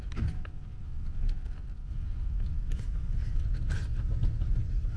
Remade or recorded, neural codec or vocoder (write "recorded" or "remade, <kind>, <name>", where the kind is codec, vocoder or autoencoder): recorded